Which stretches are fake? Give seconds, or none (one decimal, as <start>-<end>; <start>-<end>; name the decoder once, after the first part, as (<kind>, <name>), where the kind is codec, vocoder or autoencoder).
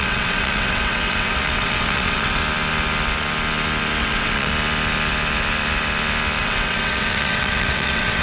0.0-2.4 (vocoder, WaveNeXt); 4.0-4.5; 6.4-8.2